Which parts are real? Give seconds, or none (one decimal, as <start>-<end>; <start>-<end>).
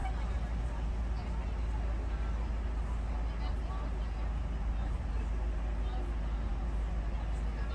0.0-7.7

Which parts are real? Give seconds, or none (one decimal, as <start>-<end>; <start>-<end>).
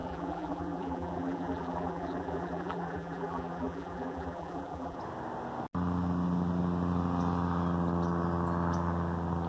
5.0-9.5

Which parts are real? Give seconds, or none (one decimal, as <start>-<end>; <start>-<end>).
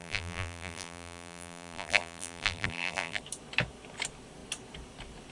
3.2-5.3